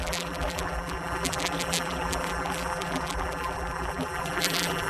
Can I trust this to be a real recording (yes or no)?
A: no